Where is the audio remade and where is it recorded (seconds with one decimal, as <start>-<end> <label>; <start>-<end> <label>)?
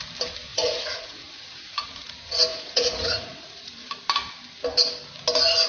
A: 0.0-0.5 recorded; 0.5-2.1 remade; 2.1-2.5 recorded; 2.5-3.9 remade; 3.9-5.7 recorded